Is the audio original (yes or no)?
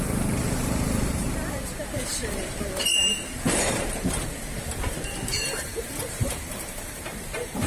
no